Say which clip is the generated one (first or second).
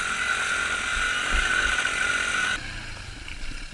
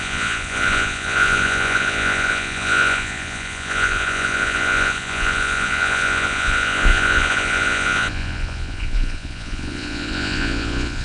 second